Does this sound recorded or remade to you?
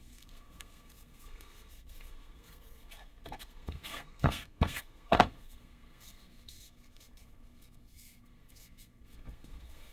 remade